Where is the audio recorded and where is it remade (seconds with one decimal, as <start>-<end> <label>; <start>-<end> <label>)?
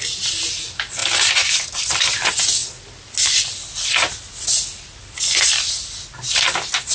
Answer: 0.0-1.0 recorded; 1.0-1.9 remade; 1.9-6.9 recorded